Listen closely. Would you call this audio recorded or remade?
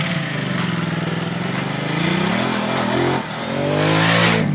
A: recorded